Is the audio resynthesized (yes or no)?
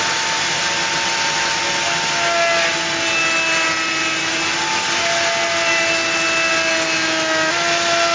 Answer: no